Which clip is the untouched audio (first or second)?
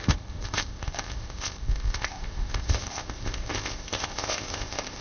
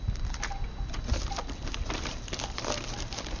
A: second